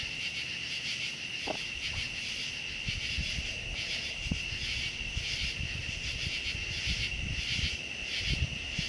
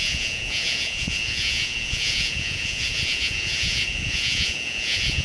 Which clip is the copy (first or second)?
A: second